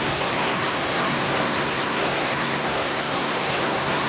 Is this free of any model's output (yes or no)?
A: no